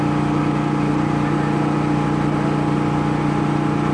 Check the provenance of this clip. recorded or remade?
recorded